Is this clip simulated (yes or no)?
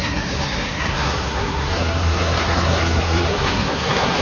yes